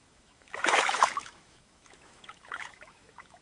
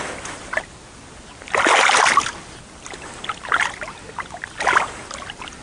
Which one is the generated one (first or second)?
first